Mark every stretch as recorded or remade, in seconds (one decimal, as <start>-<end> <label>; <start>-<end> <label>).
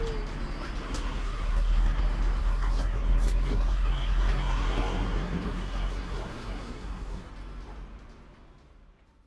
0.0-0.8 recorded; 0.8-2.0 remade; 2.0-2.4 recorded; 2.4-7.3 remade; 7.3-9.3 recorded